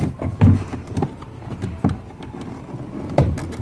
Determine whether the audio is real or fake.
real